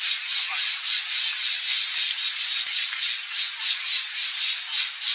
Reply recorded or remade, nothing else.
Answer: recorded